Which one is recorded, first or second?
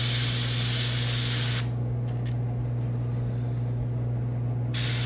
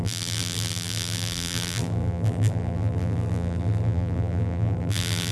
first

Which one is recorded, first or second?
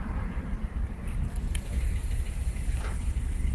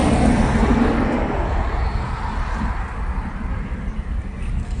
second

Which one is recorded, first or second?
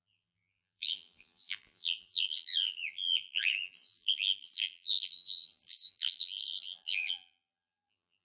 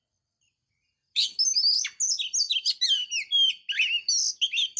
second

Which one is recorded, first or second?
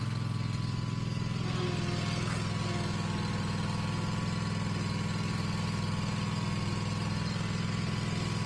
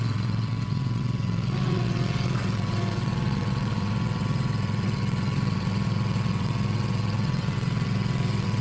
first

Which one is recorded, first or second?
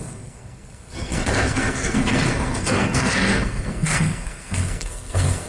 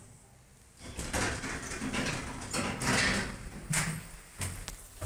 second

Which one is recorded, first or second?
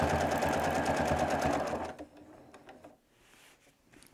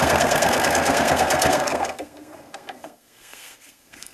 first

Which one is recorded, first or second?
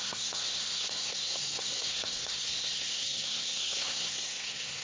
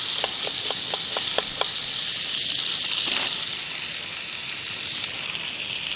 second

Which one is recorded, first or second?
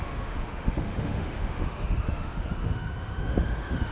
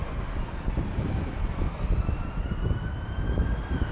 second